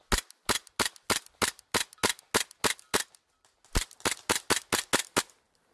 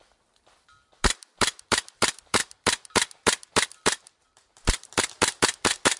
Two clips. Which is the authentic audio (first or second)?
first